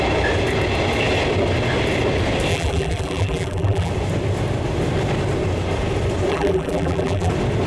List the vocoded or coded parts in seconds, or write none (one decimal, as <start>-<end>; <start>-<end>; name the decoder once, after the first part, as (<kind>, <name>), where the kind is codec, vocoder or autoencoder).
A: 2.5-3.9 (vocoder, BigVGAN v2); 6.3-7.3